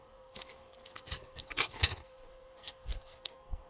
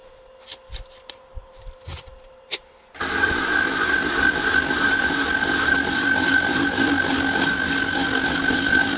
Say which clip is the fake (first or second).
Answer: first